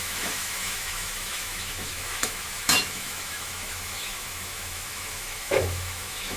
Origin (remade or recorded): remade